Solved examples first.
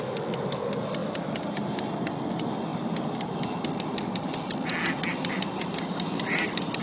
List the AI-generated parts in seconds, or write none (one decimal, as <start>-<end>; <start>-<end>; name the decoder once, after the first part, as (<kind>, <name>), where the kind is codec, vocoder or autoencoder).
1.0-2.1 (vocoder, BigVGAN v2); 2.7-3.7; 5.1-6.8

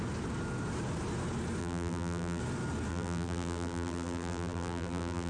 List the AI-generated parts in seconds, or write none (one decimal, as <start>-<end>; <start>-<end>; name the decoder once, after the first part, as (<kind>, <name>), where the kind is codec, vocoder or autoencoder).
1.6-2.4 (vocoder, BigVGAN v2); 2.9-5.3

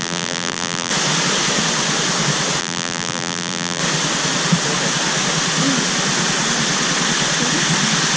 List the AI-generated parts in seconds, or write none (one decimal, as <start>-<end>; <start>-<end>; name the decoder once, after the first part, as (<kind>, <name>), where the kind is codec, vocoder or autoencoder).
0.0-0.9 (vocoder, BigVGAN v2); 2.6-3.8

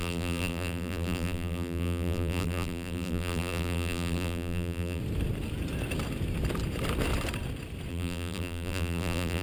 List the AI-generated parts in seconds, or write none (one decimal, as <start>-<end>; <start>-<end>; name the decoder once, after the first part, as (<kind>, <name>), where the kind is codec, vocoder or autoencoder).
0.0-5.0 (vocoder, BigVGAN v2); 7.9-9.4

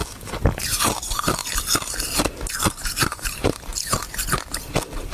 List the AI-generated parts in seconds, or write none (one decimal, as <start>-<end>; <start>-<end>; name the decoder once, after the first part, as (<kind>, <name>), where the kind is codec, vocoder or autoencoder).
0.6-1.4 (vocoder, BigVGAN v2); 2.5-3.7